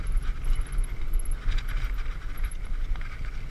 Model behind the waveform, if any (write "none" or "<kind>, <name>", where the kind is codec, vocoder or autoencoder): none